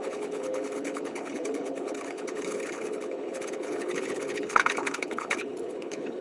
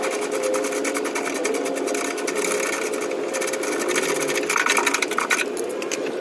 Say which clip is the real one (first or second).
second